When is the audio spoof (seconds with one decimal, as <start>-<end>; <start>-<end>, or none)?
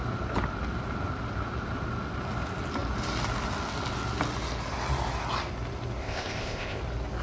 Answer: 6.0-6.8